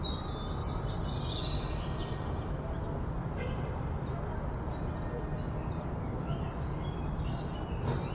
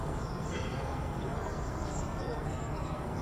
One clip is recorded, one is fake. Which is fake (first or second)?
second